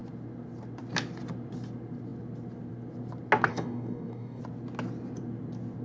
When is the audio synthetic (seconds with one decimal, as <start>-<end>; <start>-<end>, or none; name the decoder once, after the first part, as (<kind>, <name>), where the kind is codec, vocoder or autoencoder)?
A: 3.5-4.4 (codec, DAC)